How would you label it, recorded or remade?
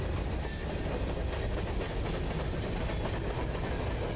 recorded